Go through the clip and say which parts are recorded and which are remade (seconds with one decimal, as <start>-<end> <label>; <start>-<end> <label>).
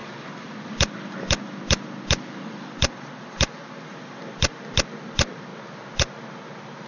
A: 0.0-5.5 remade; 5.5-6.9 recorded